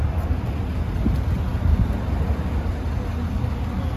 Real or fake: real